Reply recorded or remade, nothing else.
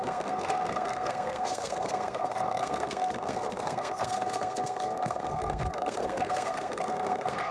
remade